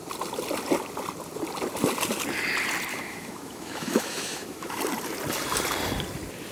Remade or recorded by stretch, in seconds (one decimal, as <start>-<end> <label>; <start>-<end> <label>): 0.0-2.9 recorded; 2.9-4.8 remade; 4.8-6.5 recorded

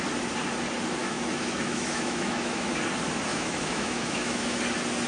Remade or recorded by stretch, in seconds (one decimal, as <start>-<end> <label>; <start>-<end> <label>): 0.0-1.0 recorded; 1.0-2.7 remade; 2.7-3.3 recorded; 3.3-4.6 remade; 4.6-5.1 recorded

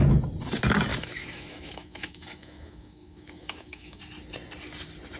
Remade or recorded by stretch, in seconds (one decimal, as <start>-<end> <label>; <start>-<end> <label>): 0.0-0.9 recorded; 0.9-4.0 remade; 4.0-5.2 recorded

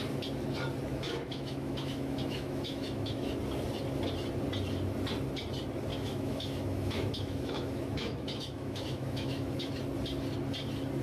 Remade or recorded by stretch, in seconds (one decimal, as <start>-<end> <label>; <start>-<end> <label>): 0.0-0.9 recorded; 0.9-3.3 remade; 3.3-5.9 recorded; 5.9-9.7 remade; 9.7-11.0 recorded

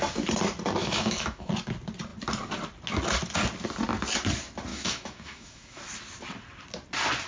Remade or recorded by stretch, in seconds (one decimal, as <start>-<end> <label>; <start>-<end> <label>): 0.0-0.8 recorded; 0.8-1.5 remade; 1.5-4.7 recorded; 4.7-5.8 remade; 5.8-7.3 recorded

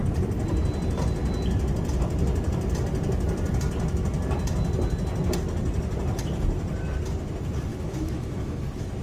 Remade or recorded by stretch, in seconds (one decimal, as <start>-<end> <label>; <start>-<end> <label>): 0.0-7.7 recorded; 7.7-8.6 remade; 8.6-9.0 recorded

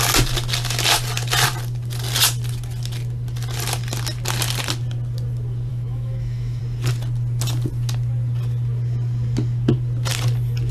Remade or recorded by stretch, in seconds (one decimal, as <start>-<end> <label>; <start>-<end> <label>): 0.0-5.7 recorded; 5.7-6.6 remade; 6.6-10.7 recorded